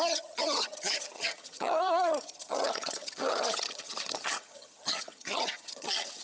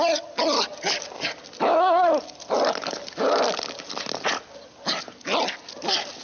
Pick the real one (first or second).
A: second